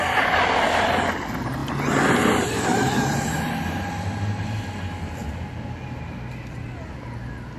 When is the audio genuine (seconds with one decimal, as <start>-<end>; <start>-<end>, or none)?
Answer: 0.0-2.7; 3.9-7.6